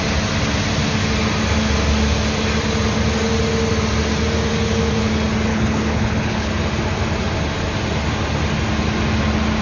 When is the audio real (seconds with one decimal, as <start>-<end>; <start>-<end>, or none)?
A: 0.0-5.5; 6.5-9.6